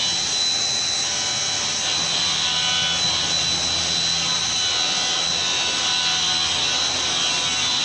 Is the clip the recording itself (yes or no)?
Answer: yes